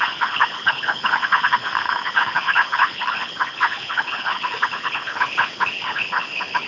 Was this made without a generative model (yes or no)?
no